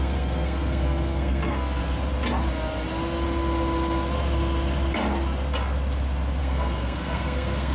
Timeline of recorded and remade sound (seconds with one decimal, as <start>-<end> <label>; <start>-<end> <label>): 0.0-1.8 remade; 1.8-6.4 recorded; 6.4-7.7 remade

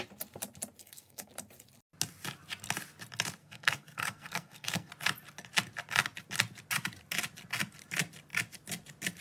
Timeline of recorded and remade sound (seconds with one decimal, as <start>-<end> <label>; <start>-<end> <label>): 0.0-0.8 recorded; 0.8-1.3 remade; 1.3-3.4 recorded; 3.4-4.9 remade; 4.9-9.2 recorded